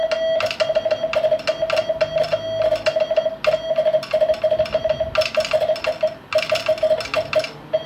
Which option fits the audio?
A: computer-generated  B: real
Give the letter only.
B